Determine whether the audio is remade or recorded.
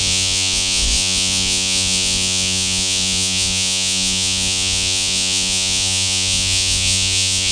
remade